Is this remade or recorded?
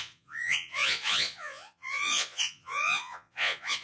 remade